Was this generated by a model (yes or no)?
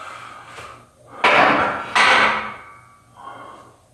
no